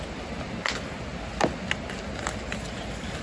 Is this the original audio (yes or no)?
yes